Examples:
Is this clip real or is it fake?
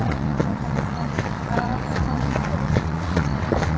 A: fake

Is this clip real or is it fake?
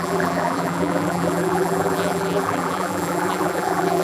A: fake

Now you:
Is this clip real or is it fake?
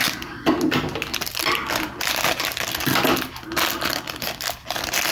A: real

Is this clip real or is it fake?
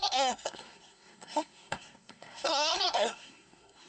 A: fake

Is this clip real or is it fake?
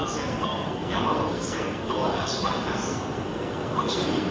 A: fake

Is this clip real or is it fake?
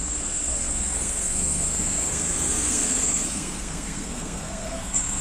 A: fake